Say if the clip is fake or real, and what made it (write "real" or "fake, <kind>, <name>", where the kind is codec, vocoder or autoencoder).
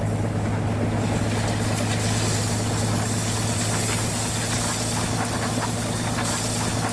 real